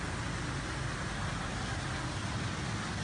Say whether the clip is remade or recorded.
recorded